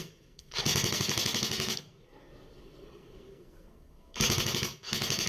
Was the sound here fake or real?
fake